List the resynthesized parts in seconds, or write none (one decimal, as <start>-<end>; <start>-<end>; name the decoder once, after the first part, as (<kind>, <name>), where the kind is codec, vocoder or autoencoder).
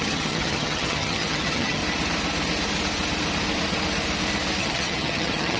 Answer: 0.0-1.8 (vocoder, HiFi-GAN); 4.6-5.6